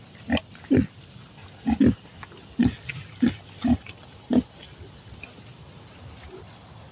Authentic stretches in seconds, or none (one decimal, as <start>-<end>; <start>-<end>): 0.0-6.9